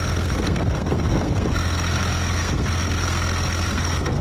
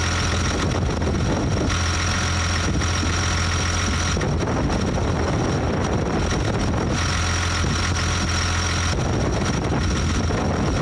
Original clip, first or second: second